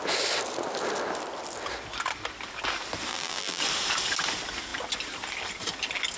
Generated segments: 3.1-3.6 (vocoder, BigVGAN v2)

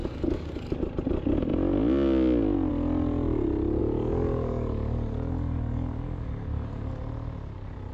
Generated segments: 0.0-0.8 (codec, DAC); 3.8-6.9

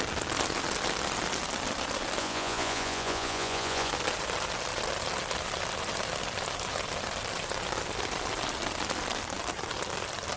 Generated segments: 2.2-3.9 (vocoder, Vocos)